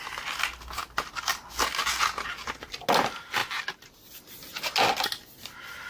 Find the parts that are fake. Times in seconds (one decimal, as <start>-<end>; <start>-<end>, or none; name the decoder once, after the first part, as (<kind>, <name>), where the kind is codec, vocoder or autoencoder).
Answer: none